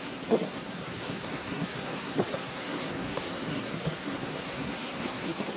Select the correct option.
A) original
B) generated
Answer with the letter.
B